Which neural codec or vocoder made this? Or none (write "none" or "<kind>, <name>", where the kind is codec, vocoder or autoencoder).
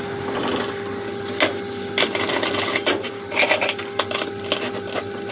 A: none